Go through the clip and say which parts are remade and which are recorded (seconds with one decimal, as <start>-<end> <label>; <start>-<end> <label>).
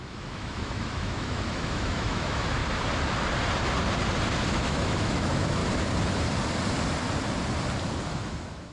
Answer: 0.0-2.6 remade; 2.6-4.5 recorded; 4.5-5.6 remade; 5.6-8.1 recorded; 8.1-8.7 remade